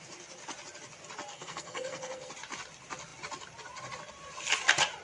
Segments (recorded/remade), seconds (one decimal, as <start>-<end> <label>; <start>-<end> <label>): 0.0-1.3 recorded; 1.3-2.3 remade; 2.3-5.0 recorded